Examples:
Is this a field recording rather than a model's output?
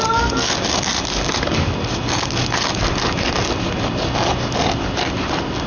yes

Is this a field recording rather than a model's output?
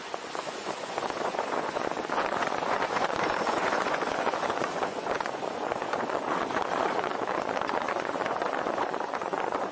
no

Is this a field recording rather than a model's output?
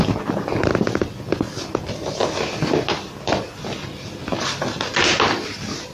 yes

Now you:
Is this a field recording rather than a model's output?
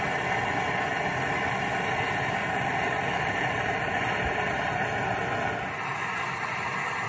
yes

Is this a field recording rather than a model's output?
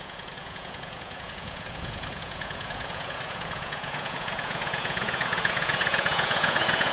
no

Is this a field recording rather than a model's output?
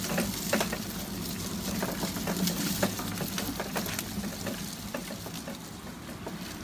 yes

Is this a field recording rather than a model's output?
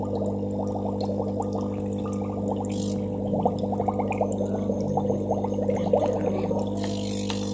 yes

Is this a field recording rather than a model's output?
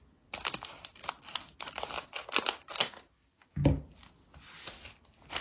yes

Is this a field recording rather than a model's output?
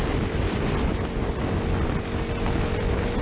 yes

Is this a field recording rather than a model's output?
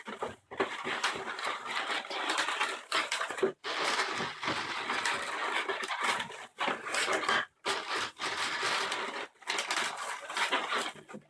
yes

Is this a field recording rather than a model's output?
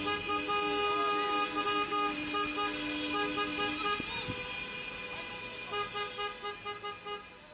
yes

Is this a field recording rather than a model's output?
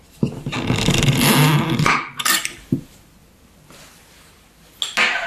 yes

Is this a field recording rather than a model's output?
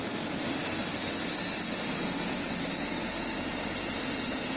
yes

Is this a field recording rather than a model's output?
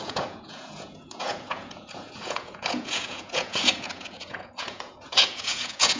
no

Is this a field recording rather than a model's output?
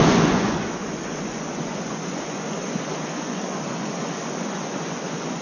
no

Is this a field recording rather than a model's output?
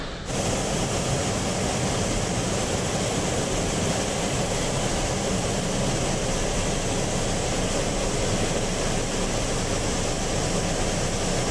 yes